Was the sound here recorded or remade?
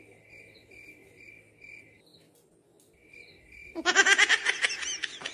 recorded